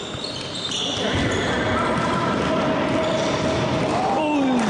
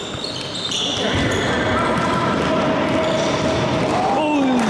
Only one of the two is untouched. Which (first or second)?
second